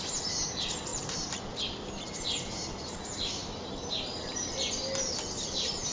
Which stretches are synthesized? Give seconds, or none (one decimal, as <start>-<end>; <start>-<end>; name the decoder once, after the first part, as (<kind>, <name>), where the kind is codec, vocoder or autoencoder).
0.9-1.6 (vocoder, BigVGAN v2); 3.4-4.6

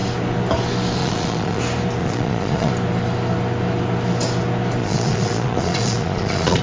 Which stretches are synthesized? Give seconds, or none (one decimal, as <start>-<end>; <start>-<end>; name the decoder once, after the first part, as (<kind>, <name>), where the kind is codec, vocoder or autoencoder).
1.0-1.6 (vocoder, Vocos); 2.0-2.7; 4.8-6.6

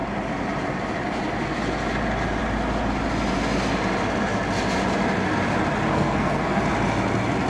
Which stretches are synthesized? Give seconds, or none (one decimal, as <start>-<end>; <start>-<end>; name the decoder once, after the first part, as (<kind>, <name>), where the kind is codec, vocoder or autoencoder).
5.9-6.6 (codec, SNAC)